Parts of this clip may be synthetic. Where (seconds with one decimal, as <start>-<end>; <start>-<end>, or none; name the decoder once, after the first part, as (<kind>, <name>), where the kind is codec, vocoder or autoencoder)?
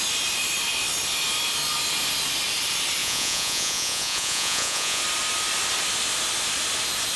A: 3.0-5.0 (vocoder, Vocos)